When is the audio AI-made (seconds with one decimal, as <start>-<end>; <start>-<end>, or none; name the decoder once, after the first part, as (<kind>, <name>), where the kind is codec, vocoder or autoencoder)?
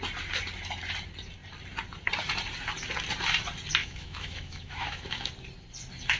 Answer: 3.8-5.3 (autoencoder, DAC-VAE)